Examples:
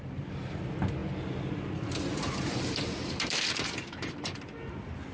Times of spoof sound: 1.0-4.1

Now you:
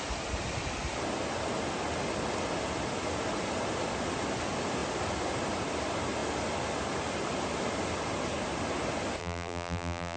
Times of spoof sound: 9.2-10.2

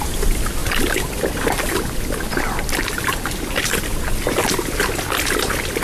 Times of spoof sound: none

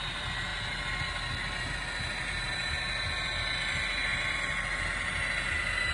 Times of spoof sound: none

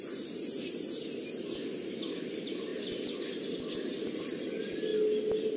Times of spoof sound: 0.0-2.7; 4.4-4.9

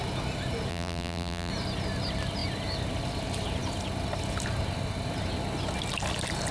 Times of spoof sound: 0.7-1.5

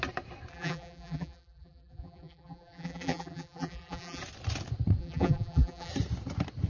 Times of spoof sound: 0.5-4.2; 5.0-5.9